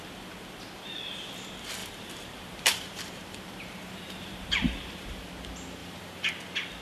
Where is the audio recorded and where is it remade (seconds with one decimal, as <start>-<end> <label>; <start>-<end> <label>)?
0.0-1.8 recorded; 1.8-5.3 remade; 5.3-5.8 recorded; 5.8-6.3 remade; 6.3-6.8 recorded